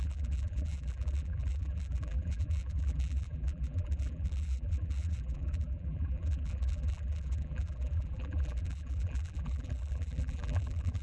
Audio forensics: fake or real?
fake